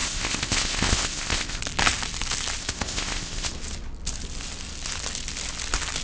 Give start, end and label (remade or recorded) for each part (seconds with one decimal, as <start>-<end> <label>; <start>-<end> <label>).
0.0-1.6 remade; 1.6-2.6 recorded; 2.6-3.5 remade; 3.5-6.0 recorded